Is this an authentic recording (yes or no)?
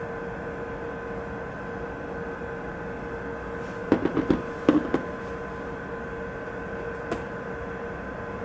yes